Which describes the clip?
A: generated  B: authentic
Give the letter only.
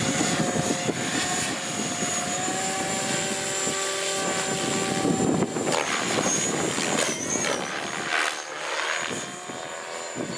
B